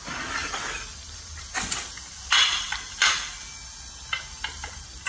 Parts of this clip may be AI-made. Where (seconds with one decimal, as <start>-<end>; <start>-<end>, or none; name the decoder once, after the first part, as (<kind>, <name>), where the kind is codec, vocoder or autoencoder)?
0.4-3.5 (vocoder, BigVGAN v2); 4.5-5.1